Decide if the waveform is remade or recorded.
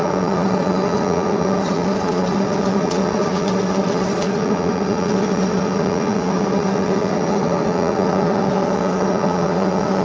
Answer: remade